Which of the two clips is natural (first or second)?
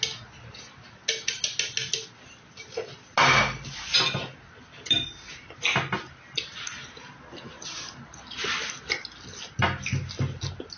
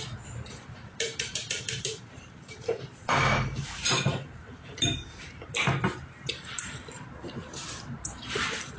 first